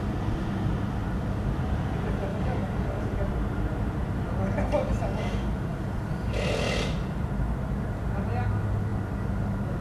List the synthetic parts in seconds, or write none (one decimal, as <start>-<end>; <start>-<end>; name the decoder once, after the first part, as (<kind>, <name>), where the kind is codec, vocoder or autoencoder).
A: 2.3-3.0 (codec, DAC)